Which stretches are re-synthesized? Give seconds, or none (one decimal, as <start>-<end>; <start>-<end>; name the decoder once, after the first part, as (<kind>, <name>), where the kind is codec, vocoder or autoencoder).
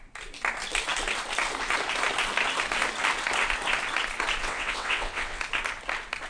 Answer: 4.4-5.4 (vocoder, WaveNeXt)